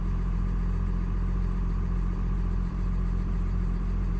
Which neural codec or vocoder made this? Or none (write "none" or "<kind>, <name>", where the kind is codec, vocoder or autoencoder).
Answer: vocoder, BigVGAN v2